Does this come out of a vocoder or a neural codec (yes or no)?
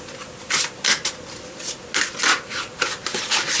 no